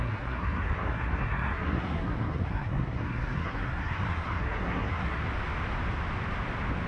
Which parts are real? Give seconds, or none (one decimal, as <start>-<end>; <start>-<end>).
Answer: 5.2-6.9

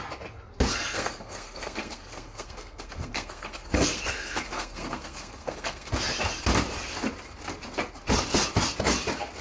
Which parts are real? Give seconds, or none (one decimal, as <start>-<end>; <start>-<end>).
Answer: 0.0-0.7; 5.9-9.4

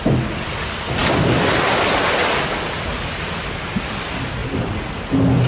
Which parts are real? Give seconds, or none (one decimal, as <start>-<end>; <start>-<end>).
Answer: 0.0-5.5